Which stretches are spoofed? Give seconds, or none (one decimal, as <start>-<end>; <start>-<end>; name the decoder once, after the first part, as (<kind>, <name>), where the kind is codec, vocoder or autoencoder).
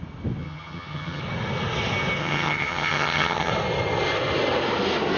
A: 0.4-1.2 (vocoder, HiFi-GAN); 2.2-3.5